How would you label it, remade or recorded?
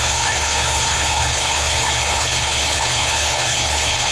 remade